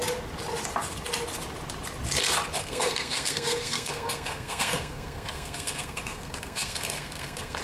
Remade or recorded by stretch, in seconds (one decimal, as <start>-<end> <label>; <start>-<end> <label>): 0.0-2.6 recorded; 2.6-7.6 remade